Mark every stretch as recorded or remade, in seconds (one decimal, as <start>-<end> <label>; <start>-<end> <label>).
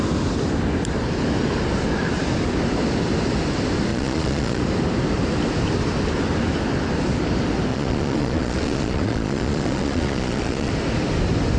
0.0-3.9 recorded; 3.9-4.6 remade; 4.6-7.7 recorded; 7.7-10.7 remade; 10.7-11.6 recorded